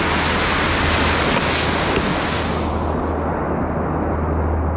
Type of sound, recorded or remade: recorded